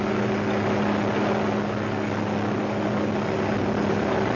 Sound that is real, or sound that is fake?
real